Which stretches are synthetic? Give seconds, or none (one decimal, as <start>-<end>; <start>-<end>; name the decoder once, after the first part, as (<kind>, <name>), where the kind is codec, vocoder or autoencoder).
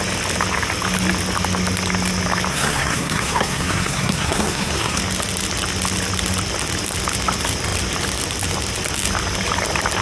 2.5-5.0 (codec, SNAC)